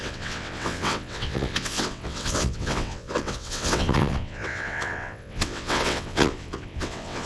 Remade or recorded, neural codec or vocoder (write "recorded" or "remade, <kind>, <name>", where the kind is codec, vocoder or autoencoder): remade, vocoder, WaveNeXt